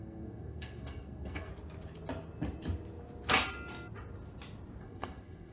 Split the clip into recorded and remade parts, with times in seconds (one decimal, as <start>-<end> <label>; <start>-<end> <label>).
0.0-1.5 remade; 1.5-4.8 recorded; 4.8-5.5 remade

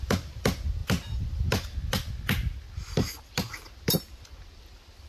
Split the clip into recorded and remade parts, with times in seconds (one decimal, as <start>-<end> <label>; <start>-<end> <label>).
0.0-5.1 recorded

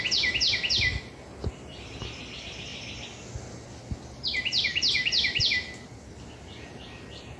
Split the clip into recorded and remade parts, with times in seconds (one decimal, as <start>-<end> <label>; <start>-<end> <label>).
0.0-7.4 recorded

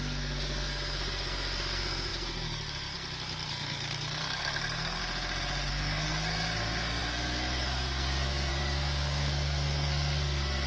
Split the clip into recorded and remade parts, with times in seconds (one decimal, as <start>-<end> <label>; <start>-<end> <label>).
0.0-5.0 remade; 5.0-5.7 recorded; 5.7-10.7 remade

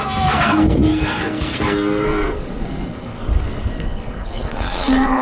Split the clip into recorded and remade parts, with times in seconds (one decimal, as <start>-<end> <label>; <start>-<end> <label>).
0.0-5.2 remade

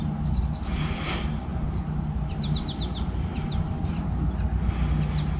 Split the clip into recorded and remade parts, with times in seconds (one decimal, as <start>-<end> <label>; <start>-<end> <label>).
0.0-5.4 recorded

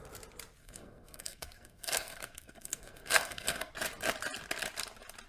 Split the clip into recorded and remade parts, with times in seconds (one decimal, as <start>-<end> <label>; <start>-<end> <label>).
0.0-0.6 recorded; 0.6-3.7 remade; 3.7-5.3 recorded